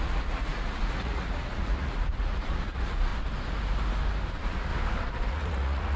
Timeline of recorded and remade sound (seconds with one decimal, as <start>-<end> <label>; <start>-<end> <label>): 0.0-3.1 remade; 3.1-4.3 recorded; 4.3-4.7 remade; 4.7-5.3 recorded; 5.3-6.0 remade